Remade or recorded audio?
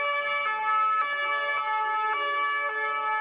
recorded